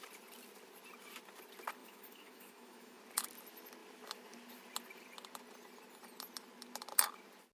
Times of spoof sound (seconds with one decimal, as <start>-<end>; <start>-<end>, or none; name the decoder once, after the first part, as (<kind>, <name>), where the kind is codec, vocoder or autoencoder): 1.8-3.0 (autoencoder, DAC-VAE)